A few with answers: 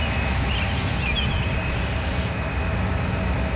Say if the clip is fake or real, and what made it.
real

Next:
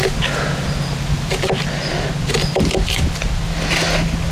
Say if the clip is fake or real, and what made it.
real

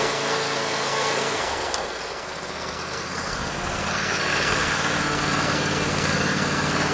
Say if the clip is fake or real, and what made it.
fake, codec, SNAC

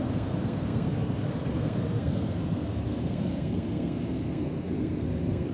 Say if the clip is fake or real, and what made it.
fake, codec, SNAC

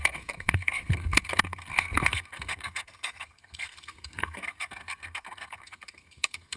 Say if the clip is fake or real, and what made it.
fake, codec, SNAC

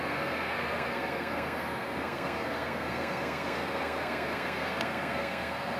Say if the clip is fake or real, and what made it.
fake, codec, SNAC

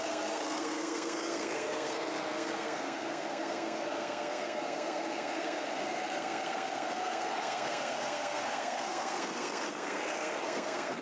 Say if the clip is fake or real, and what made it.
fake, codec, SNAC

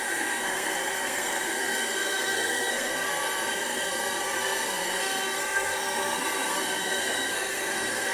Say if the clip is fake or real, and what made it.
fake, codec, SNAC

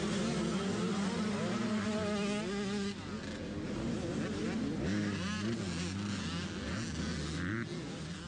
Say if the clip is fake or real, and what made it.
real